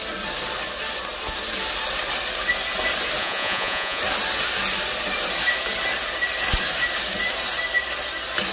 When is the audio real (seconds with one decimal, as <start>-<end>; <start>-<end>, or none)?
0.0-3.2; 4.0-8.5